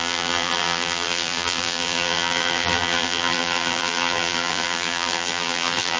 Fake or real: fake